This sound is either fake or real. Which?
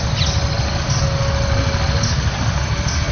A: real